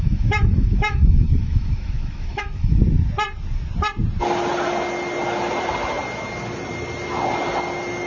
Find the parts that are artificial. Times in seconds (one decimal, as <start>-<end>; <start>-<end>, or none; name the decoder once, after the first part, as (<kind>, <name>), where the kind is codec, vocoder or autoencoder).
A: 0.0-2.8 (autoencoder, DAC-VAE)